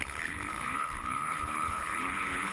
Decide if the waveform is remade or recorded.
remade